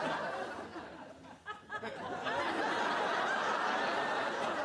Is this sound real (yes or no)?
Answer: yes